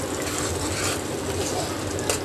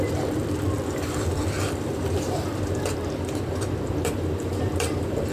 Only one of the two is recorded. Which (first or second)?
first